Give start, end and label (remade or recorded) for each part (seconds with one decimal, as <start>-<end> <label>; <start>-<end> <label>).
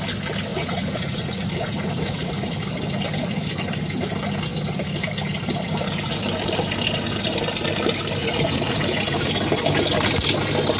0.0-0.5 recorded; 0.5-2.5 remade; 2.5-8.2 recorded; 8.2-9.3 remade; 9.3-10.8 recorded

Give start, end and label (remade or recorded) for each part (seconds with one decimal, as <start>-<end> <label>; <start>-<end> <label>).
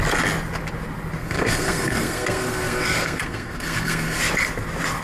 0.0-1.2 recorded; 1.2-4.2 remade; 4.2-5.0 recorded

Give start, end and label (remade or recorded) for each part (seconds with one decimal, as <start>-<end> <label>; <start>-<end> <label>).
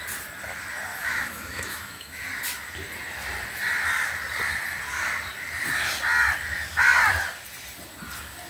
0.0-0.9 recorded; 0.9-2.2 remade; 2.2-8.5 recorded